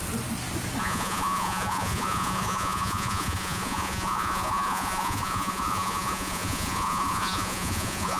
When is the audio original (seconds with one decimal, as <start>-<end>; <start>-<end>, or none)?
0.0-0.8